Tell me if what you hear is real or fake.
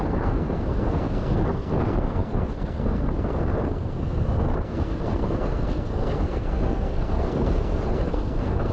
fake